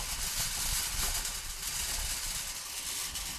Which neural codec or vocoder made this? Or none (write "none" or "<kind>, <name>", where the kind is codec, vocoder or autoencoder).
none